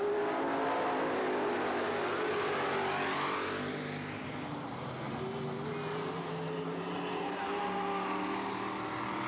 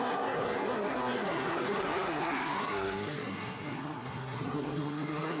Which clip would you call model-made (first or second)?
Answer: second